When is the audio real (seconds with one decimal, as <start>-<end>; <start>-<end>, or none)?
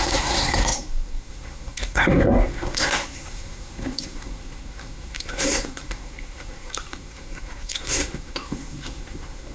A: none